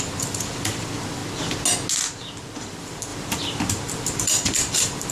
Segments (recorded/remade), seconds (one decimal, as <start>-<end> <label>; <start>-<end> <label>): 0.0-1.2 remade; 1.2-2.6 recorded; 2.6-5.1 remade